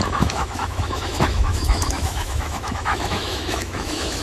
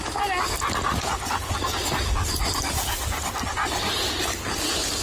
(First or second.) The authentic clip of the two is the second